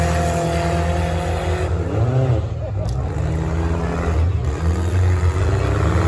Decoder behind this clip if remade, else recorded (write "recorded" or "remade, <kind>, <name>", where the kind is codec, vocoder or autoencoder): recorded